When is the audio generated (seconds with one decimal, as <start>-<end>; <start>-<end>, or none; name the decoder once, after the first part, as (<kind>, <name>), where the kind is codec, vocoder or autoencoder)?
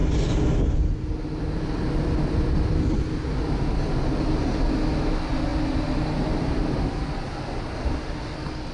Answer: none